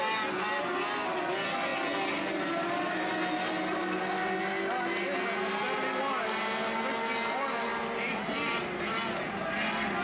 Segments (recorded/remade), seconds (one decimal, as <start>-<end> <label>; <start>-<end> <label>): 0.0-10.0 recorded